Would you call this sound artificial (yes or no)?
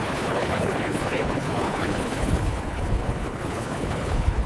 yes